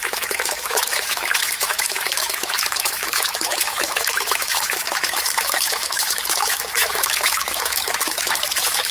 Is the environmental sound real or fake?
fake